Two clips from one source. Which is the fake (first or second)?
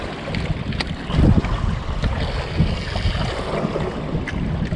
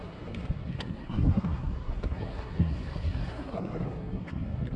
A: second